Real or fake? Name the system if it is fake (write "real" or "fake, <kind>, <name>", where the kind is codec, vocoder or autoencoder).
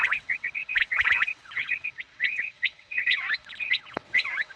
fake, vocoder, WaveNeXt